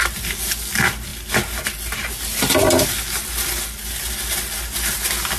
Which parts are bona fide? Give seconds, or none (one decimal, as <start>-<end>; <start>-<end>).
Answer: 0.0-5.4